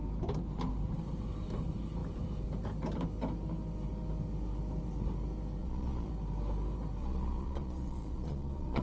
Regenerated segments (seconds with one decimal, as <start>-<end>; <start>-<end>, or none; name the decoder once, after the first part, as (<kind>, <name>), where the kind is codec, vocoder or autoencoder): 5.6-6.1 (vocoder, Vocos); 7.0-8.8